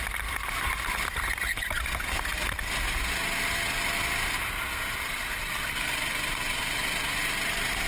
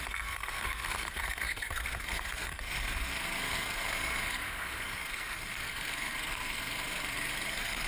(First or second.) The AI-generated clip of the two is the second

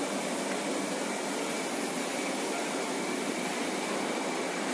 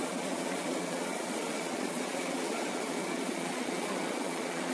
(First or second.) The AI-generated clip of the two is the second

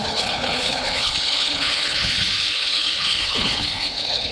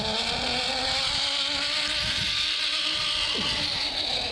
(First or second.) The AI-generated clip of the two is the first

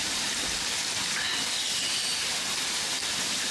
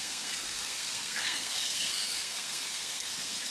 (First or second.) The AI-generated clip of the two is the second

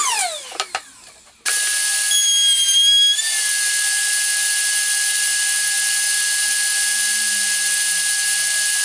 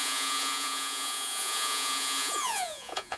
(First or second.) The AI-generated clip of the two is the second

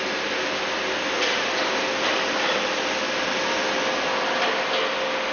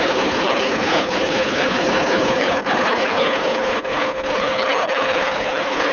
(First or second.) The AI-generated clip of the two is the second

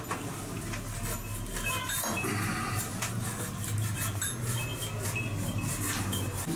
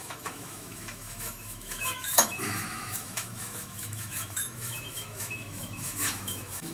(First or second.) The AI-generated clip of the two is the second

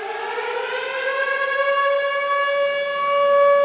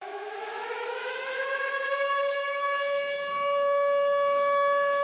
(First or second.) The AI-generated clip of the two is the second